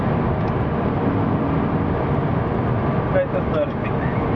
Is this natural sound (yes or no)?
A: yes